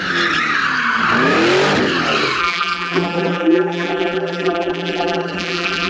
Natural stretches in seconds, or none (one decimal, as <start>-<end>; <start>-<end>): 0.0-2.4